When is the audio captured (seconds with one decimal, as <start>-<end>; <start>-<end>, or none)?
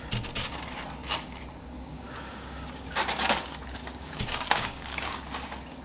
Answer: 0.0-1.9; 3.0-3.8; 5.2-5.8